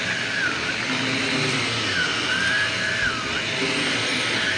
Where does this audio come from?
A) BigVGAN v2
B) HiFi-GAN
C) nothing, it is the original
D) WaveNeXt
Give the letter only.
C